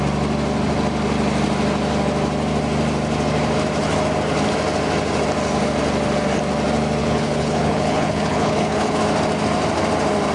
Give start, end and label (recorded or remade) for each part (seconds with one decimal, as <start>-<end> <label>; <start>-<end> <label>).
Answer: 0.0-7.0 recorded; 7.0-9.0 remade; 9.0-10.3 recorded